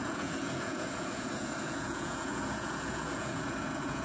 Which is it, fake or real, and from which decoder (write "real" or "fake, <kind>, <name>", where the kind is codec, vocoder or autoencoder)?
fake, vocoder, Vocos